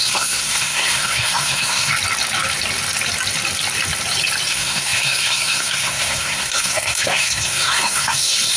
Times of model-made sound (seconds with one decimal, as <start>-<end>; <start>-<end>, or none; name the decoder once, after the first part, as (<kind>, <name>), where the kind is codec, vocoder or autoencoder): 0.0-1.9 (codec, SNAC); 4.5-8.6